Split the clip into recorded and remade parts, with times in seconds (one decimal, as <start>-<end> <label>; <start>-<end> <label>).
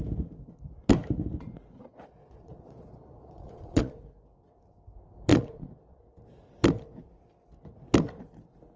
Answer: 0.0-1.8 recorded; 1.8-4.0 remade; 4.0-5.3 recorded; 5.3-6.0 remade; 6.0-8.8 recorded